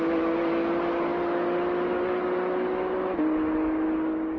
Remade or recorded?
recorded